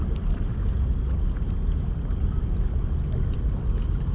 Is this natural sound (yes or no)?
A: yes